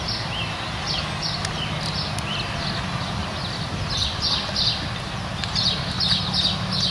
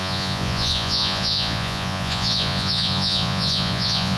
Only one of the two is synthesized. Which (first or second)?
second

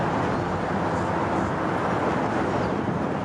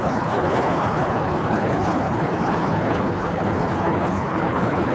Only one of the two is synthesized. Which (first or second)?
second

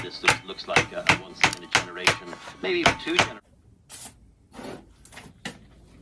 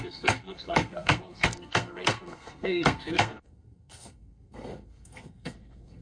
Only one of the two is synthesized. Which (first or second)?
second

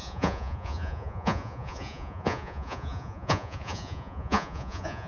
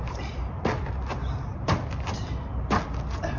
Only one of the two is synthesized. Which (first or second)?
first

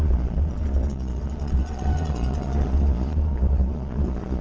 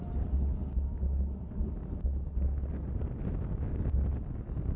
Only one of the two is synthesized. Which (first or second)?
first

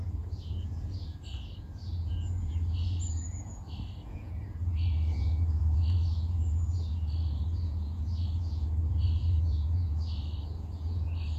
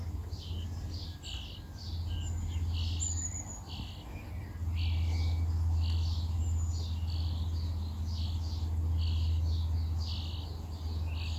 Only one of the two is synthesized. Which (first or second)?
first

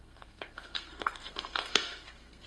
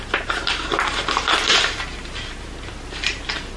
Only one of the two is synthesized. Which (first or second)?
first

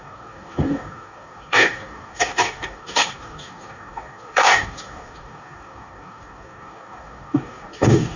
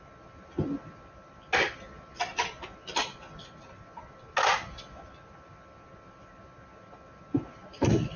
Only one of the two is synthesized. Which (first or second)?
first